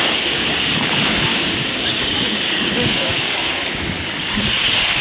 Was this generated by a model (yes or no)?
yes